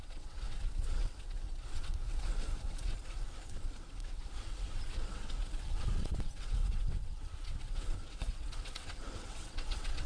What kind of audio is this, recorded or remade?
remade